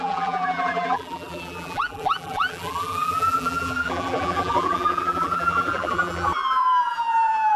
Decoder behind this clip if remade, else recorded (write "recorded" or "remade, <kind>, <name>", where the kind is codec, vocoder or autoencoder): remade, vocoder, BigVGAN v2